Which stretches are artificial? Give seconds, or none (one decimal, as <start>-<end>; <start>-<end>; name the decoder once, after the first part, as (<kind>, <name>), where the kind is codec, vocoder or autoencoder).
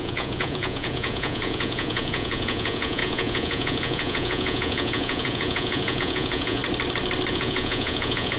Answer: 0.0-6.6 (vocoder, Vocos); 7.3-8.4